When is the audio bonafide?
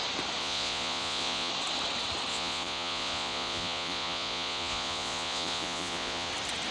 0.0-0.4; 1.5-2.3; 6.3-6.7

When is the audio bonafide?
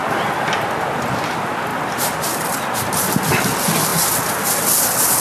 0.0-1.7; 3.1-5.2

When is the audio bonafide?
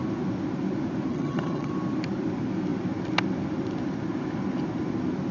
0.0-1.1; 1.7-5.3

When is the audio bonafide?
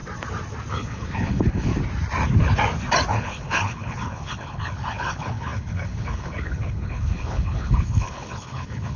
0.0-0.7; 1.7-3.1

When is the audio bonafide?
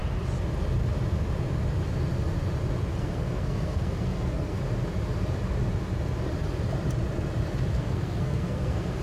0.0-2.9; 4.6-7.7